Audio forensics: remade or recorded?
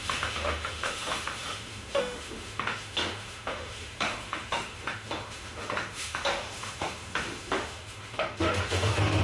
remade